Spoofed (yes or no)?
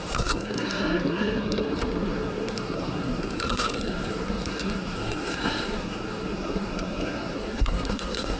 yes